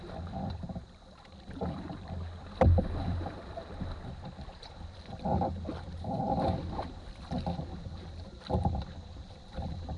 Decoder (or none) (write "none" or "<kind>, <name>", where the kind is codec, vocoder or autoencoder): vocoder, BigVGAN v2